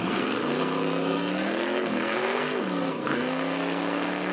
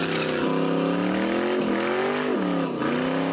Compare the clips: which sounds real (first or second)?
second